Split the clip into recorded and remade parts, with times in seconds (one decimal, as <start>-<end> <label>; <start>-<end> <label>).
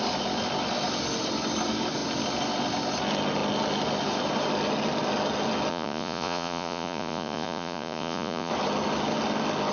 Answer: 0.0-5.7 recorded; 5.7-8.5 remade; 8.5-9.7 recorded